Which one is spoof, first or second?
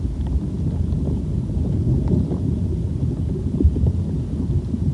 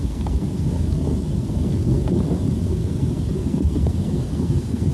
second